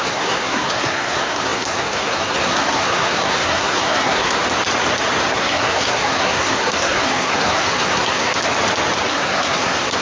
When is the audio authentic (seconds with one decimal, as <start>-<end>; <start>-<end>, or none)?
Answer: 4.4-5.3; 8.4-9.1